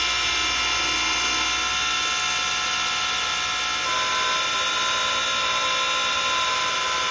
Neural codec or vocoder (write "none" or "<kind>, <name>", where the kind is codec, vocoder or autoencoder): none